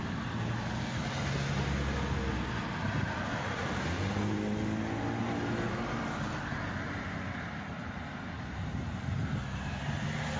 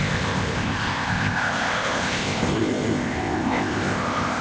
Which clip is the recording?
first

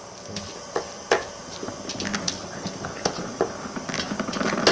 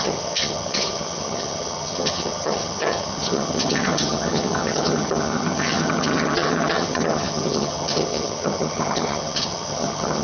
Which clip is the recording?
first